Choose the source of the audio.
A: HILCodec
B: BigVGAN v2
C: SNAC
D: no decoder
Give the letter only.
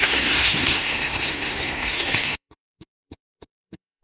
C